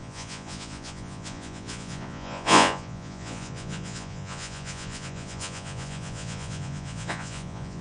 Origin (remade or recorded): remade